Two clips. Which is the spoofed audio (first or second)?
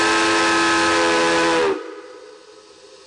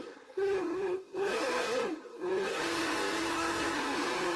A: second